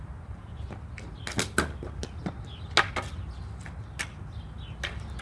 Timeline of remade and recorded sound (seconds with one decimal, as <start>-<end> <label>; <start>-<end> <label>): 0.0-5.2 recorded